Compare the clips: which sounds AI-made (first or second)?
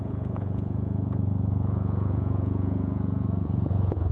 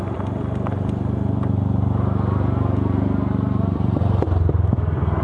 first